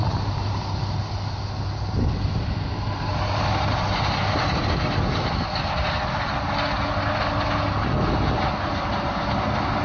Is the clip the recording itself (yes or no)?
yes